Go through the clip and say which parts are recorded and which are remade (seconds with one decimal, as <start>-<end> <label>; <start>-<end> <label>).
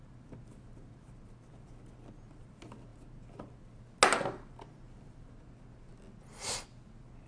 0.0-7.3 recorded